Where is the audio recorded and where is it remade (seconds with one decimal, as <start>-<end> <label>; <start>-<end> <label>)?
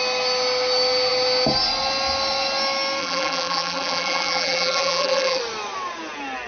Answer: 0.0-3.0 recorded; 3.0-5.4 remade; 5.4-6.5 recorded